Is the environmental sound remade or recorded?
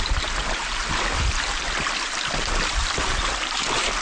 recorded